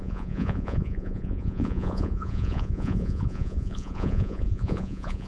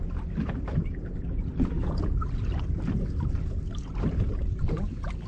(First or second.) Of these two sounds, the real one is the second